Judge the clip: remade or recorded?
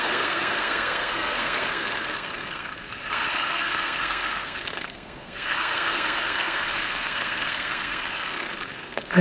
remade